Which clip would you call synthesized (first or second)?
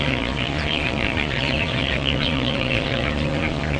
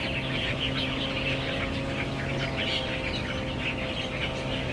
first